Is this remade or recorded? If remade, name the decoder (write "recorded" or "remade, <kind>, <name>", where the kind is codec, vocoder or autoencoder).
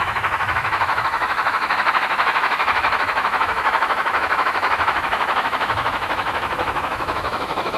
remade, autoencoder, DAC-VAE